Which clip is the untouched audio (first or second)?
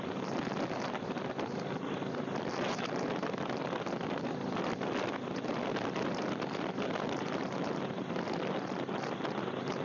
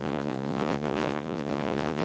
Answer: first